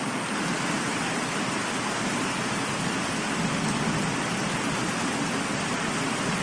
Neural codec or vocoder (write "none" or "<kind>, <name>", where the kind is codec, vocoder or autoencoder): none